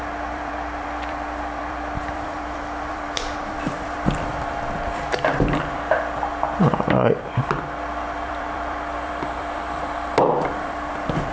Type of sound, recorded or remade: remade